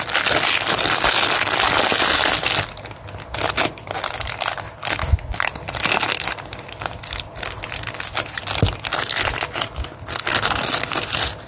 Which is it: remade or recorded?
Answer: recorded